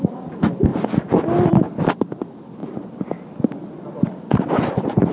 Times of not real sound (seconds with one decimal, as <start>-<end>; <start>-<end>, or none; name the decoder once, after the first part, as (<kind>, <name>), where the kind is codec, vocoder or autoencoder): none